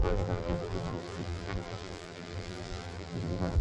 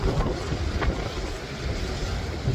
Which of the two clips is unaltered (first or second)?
second